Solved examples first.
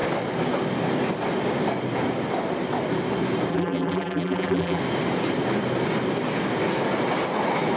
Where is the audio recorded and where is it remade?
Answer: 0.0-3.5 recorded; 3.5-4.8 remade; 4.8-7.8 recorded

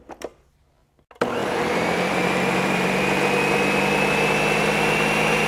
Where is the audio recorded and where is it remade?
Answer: 0.0-1.4 recorded; 1.4-3.4 remade; 3.4-5.5 recorded

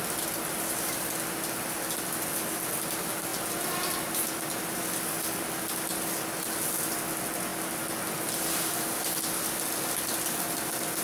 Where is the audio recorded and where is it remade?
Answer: 0.0-11.0 recorded